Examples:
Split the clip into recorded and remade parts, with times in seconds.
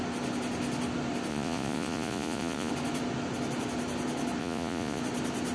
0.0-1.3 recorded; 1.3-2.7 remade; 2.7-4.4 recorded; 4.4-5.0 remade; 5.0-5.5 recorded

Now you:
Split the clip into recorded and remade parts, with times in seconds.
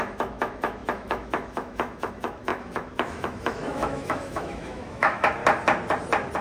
0.0-5.4 remade; 5.4-6.4 recorded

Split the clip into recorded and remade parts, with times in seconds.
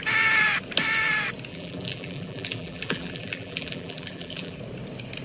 0.0-1.5 recorded; 1.5-4.6 remade; 4.6-5.2 recorded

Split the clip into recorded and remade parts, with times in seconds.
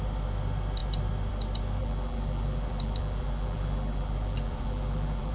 0.0-1.8 recorded; 1.8-5.3 remade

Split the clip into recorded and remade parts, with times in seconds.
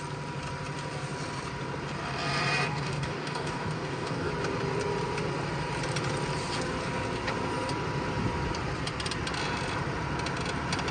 0.0-2.7 recorded; 2.7-4.3 remade; 4.3-10.9 recorded